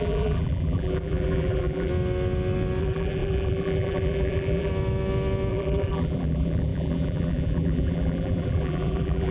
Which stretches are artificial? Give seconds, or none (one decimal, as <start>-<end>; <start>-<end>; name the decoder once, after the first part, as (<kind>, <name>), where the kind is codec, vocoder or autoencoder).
0.0-1.9 (vocoder, BigVGAN v2); 2.8-4.7; 5.5-9.3